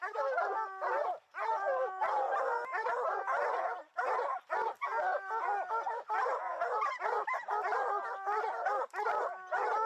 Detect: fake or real real